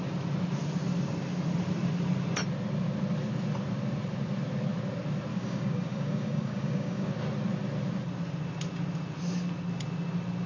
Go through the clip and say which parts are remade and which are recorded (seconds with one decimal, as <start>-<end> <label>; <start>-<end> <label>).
0.0-5.3 recorded; 5.3-7.1 remade; 7.1-10.5 recorded